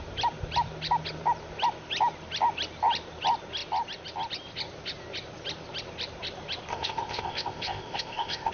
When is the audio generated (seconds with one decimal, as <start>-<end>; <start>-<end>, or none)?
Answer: 6.7-8.5